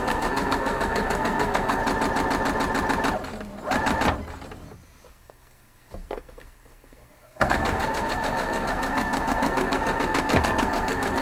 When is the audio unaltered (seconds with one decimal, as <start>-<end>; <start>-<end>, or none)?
1.8-5.1